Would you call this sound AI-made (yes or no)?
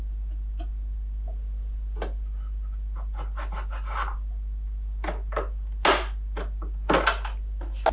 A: no